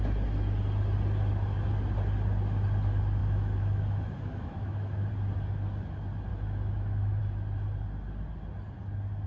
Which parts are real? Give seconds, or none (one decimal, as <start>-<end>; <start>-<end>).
0.0-3.2; 5.1-6.3; 7.2-9.3